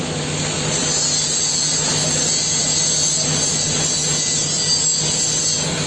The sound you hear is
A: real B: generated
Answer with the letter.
A